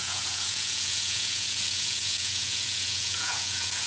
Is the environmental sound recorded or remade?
remade